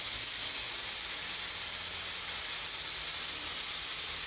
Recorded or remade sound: recorded